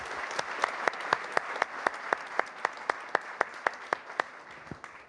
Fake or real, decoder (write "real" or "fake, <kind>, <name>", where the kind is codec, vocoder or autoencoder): real